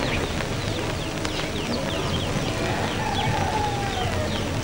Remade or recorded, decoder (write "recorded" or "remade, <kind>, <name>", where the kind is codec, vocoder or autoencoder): recorded